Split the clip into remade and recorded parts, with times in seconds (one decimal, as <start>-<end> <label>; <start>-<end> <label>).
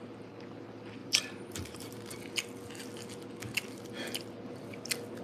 0.0-1.0 recorded; 1.0-2.0 remade; 2.0-5.2 recorded